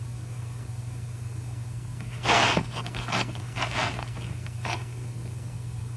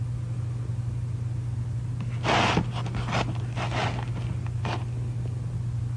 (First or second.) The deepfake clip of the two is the first